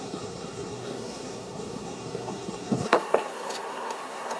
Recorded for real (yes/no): no